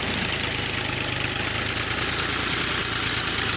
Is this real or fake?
real